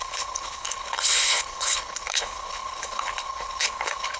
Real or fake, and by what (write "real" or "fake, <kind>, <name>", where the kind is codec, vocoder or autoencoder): fake, codec, HILCodec